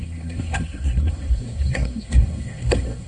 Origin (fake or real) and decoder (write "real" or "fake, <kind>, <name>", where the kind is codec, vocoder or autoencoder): fake, codec, SNAC